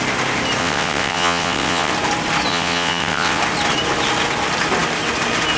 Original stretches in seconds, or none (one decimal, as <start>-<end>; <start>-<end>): 0.0-0.6; 1.9-2.5; 3.4-5.6